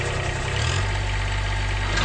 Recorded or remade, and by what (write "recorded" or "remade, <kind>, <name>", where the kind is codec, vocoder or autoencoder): recorded